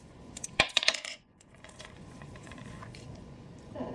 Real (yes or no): no